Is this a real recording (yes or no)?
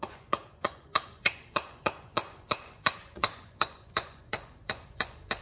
no